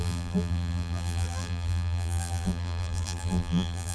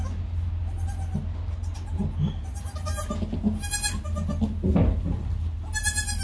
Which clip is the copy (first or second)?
first